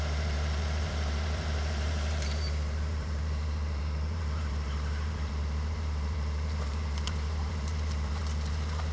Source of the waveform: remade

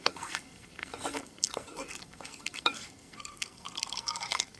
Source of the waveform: remade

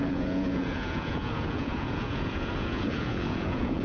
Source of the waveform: remade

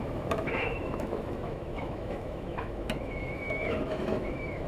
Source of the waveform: remade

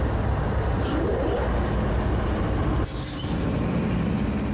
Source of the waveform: recorded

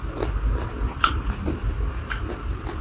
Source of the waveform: recorded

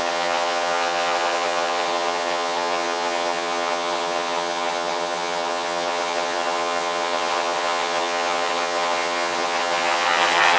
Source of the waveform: remade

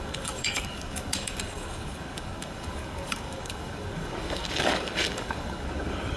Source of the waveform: remade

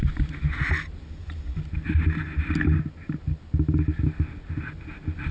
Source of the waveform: recorded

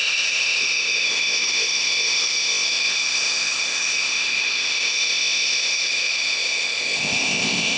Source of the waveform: remade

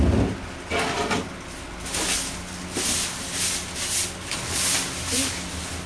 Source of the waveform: recorded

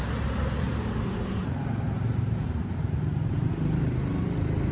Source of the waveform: remade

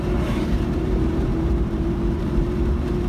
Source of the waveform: remade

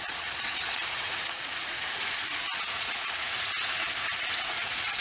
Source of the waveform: remade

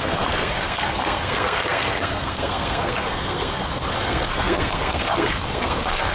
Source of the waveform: remade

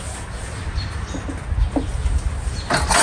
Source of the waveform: recorded